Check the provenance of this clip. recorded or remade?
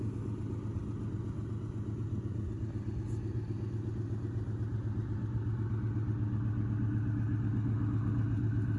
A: recorded